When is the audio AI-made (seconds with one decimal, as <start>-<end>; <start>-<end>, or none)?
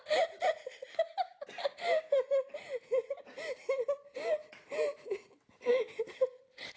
none